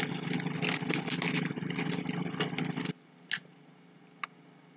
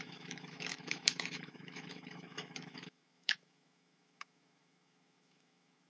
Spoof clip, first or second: second